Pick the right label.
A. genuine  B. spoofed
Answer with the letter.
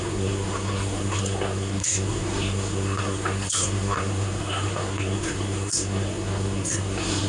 B